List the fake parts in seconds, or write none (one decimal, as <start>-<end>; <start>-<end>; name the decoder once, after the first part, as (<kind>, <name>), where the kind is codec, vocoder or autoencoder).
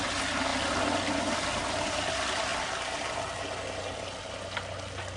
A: 2.5-3.1 (vocoder, BigVGAN v2)